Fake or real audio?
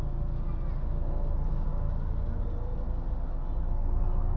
real